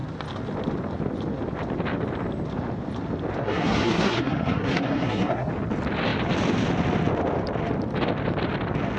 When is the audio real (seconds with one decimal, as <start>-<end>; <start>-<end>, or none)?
0.0-3.4; 5.5-9.0